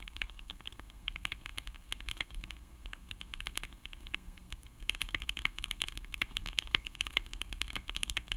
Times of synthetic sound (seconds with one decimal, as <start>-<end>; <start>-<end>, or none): 0.0-8.4